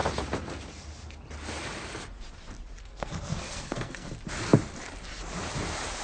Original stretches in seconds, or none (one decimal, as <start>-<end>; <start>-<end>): 0.0-2.8; 4.1-6.0